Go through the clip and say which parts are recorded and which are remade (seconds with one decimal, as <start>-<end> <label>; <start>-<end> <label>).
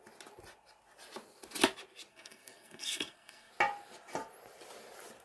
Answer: 0.0-2.1 recorded; 2.1-3.5 remade; 3.5-5.2 recorded